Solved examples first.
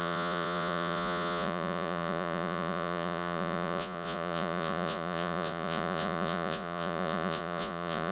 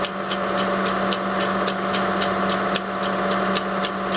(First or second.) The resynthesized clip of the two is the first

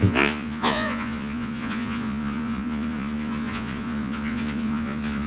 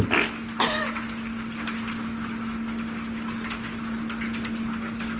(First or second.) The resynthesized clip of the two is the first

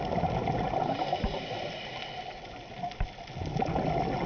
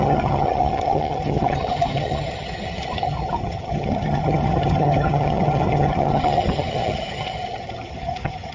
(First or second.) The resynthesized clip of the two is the second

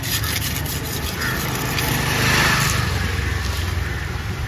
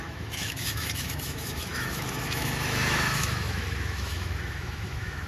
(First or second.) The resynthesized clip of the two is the second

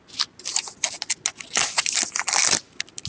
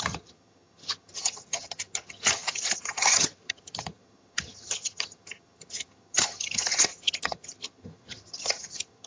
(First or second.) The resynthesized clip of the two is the second